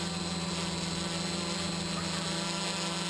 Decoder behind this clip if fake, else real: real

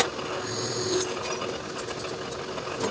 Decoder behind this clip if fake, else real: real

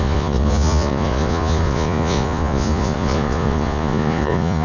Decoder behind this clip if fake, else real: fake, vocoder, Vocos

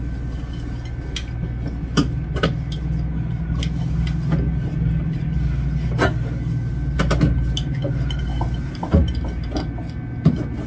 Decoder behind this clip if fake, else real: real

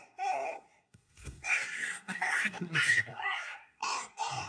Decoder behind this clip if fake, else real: fake, codec, SNAC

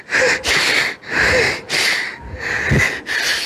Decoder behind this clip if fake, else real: real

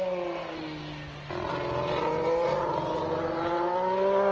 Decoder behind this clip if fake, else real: real